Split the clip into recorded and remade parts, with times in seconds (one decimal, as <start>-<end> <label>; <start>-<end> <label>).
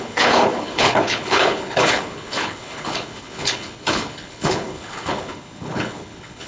0.0-6.5 remade